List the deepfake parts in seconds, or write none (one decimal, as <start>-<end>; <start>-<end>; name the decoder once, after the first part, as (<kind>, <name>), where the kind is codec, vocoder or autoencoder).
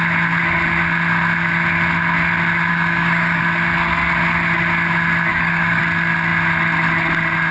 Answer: 2.7-3.4 (codec, DAC); 5.3-5.8